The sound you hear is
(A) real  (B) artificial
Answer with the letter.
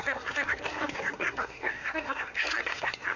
B